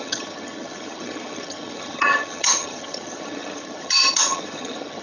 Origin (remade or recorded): remade